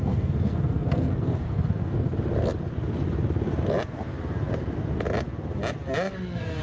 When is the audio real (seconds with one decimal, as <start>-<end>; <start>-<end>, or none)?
2.1-6.1